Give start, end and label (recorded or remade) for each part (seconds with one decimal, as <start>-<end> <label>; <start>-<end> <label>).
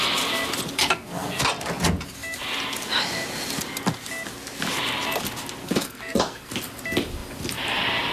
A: 0.0-0.8 recorded; 0.8-1.4 remade; 1.4-5.6 recorded; 5.6-6.5 remade; 6.5-8.1 recorded